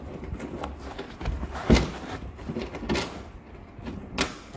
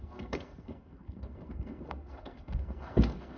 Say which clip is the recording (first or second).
first